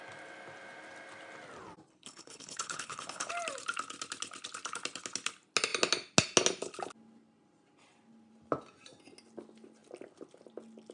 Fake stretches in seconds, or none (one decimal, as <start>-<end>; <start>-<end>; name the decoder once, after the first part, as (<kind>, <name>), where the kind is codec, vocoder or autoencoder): 1.9-3.3 (codec, HILCodec)